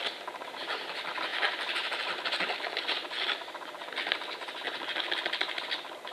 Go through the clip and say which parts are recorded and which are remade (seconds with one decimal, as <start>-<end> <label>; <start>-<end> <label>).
0.0-6.1 recorded